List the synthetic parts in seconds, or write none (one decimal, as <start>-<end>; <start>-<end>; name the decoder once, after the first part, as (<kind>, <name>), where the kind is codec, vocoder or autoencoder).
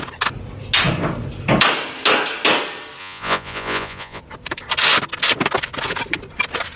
3.0-4.2 (vocoder, Vocos)